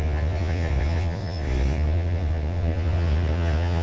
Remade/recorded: remade